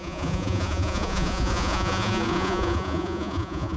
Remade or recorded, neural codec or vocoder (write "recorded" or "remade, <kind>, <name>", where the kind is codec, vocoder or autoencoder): remade, vocoder, Vocos